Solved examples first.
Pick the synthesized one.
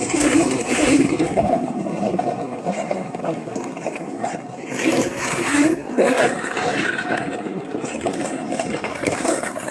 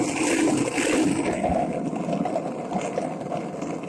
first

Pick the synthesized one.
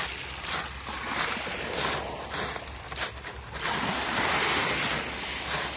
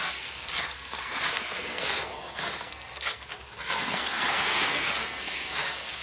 second